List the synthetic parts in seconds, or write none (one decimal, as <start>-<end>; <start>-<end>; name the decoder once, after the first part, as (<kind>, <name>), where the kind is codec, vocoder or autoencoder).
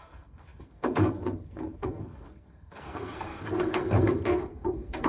0.0-5.1 (codec, SNAC)